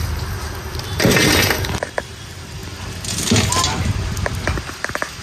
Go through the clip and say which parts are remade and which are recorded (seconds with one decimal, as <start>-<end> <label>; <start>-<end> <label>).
0.0-5.2 recorded